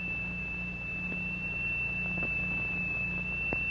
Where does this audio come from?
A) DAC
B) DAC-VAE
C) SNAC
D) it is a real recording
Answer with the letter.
D